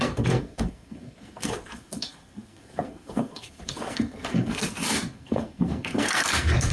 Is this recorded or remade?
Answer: remade